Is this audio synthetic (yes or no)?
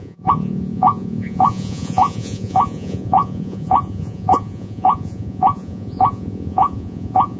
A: yes